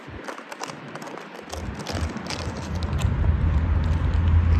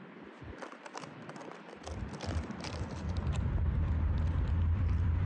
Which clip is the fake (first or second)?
second